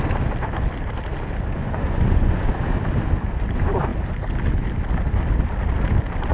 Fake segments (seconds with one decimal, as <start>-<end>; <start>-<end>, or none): 1.6-2.4